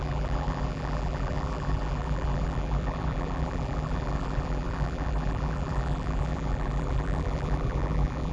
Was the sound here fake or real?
fake